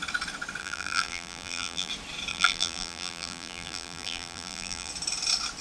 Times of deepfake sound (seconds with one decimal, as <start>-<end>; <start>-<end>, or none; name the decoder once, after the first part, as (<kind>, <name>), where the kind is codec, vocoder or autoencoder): 0.6-1.9 (vocoder, BigVGAN v2); 2.3-4.9